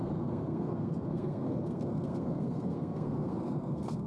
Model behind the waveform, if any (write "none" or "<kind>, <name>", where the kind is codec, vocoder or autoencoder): codec, SNAC